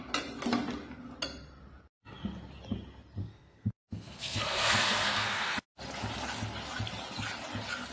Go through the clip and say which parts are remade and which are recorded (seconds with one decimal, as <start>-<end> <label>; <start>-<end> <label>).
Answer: 0.0-3.2 recorded; 3.2-5.5 remade; 5.5-7.9 recorded